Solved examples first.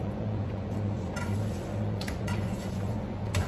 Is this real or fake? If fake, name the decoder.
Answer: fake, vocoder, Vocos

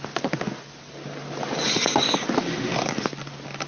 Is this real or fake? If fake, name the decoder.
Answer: real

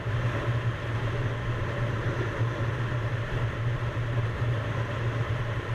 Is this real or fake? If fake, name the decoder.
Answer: real